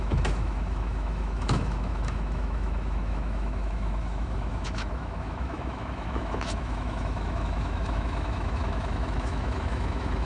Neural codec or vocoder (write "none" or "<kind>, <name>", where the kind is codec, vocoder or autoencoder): autoencoder, DAC-VAE